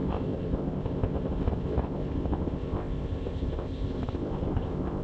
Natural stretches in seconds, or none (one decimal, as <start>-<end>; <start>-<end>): none